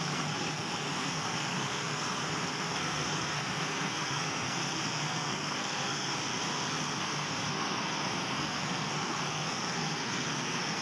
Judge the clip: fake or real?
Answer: fake